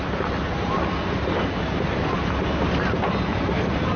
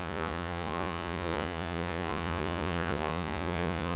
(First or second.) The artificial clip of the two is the second